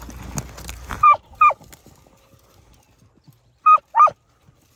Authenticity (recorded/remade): recorded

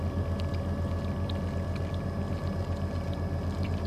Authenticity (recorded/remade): recorded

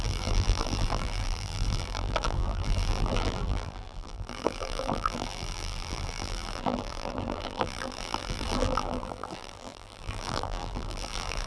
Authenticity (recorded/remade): remade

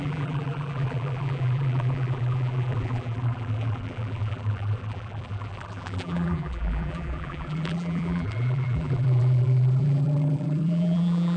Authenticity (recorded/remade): remade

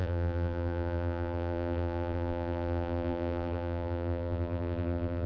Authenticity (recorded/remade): remade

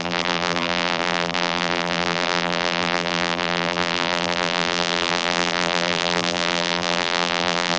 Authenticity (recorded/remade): remade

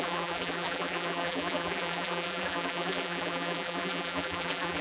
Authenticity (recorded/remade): remade